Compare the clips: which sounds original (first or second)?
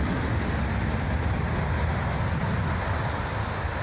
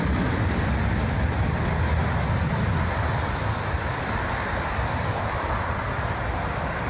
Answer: first